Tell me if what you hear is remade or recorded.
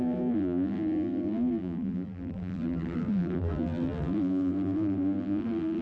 remade